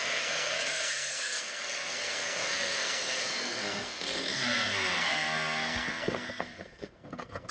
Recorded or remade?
remade